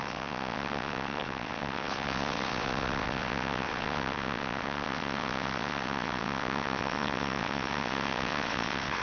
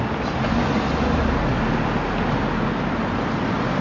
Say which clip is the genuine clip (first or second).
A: second